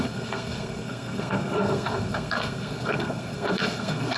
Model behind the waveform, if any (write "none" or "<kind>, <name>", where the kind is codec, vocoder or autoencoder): codec, SNAC